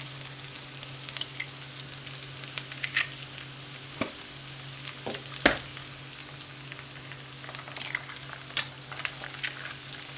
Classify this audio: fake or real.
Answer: real